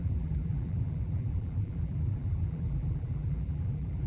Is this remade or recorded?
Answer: remade